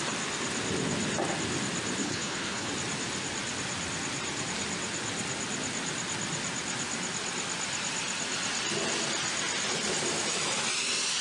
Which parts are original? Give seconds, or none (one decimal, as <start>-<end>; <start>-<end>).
0.0-2.0; 2.7-11.2

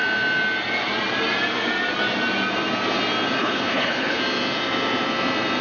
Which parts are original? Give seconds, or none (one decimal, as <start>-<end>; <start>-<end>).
0.0-3.4; 4.2-5.6

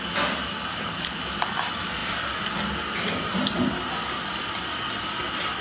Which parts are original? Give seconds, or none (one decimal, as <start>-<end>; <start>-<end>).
0.0-0.7; 1.2-5.6

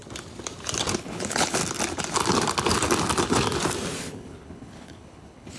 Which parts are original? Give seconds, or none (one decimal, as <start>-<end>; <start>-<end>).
0.0-1.0; 1.6-4.0